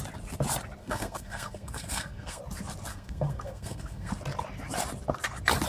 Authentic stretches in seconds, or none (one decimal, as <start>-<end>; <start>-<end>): 0.0-0.8; 2.4-2.9; 4.1-5.7